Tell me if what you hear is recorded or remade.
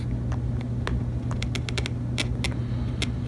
recorded